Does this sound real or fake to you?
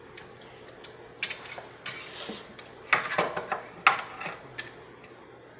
real